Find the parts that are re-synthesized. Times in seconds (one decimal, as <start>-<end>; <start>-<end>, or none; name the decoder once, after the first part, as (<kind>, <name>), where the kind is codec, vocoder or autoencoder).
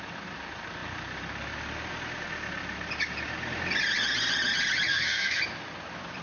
4.9-5.4 (codec, SNAC)